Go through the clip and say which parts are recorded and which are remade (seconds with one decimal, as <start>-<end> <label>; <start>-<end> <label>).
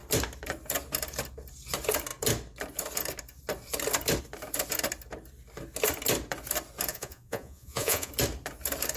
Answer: 0.0-6.9 recorded; 6.9-8.1 remade; 8.1-9.0 recorded